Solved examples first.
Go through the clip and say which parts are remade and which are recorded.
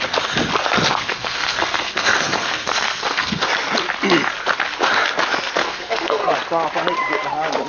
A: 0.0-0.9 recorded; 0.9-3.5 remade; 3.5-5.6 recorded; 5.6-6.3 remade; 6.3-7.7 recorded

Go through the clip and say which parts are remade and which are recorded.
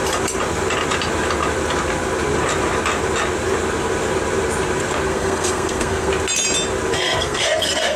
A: 0.0-5.1 recorded; 5.1-6.1 remade; 6.1-6.9 recorded; 6.9-8.0 remade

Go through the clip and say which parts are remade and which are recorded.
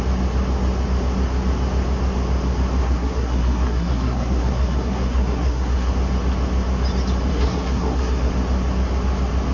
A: 0.0-2.8 recorded; 2.8-5.9 remade; 5.9-7.3 recorded; 7.3-8.3 remade; 8.3-9.5 recorded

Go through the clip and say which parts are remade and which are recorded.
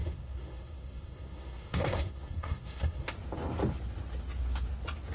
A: 0.0-3.1 remade; 3.1-5.1 recorded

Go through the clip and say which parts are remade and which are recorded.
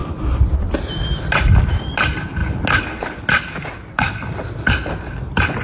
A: 0.0-5.6 recorded